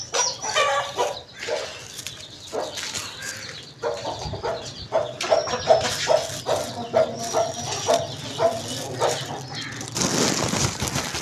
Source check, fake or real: real